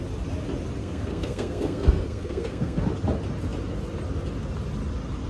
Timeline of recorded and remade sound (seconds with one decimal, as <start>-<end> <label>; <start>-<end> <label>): 0.0-0.8 recorded; 0.8-2.8 remade; 2.8-5.3 recorded